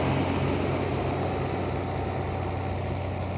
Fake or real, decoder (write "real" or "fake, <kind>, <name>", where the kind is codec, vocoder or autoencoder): real